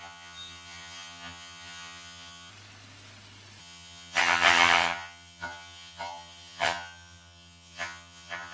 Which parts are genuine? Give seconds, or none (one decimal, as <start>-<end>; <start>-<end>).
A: 2.5-3.6